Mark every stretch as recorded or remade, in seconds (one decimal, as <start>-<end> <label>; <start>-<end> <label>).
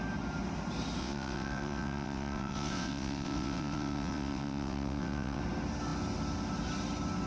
0.0-1.0 recorded; 1.0-5.4 remade; 5.4-7.3 recorded